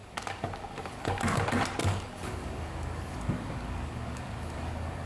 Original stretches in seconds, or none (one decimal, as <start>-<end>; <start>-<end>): 1.4-1.8